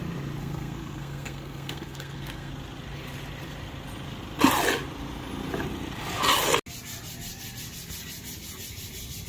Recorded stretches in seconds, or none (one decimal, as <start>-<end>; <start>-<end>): 0.0-0.4; 2.5-9.3